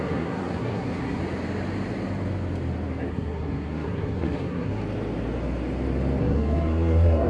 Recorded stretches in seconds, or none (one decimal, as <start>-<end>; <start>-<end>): 1.2-3.1; 4.8-6.2